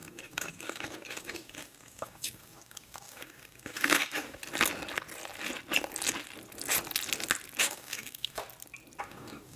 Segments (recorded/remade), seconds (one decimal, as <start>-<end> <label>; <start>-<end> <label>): 0.0-4.4 remade; 4.4-7.6 recorded; 7.6-8.4 remade; 8.4-9.0 recorded; 9.0-9.6 remade